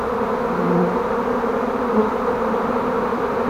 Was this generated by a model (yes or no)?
no